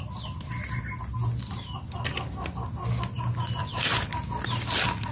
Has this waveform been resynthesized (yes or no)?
no